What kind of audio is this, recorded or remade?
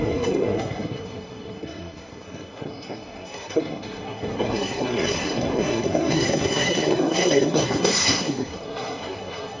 remade